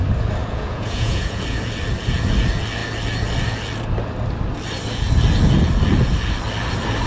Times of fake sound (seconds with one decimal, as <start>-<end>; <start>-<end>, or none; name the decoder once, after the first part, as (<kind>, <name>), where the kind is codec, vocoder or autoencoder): 0.4-1.4 (vocoder, Vocos)